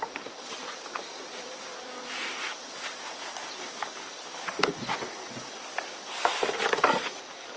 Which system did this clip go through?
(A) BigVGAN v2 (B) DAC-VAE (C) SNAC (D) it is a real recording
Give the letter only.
D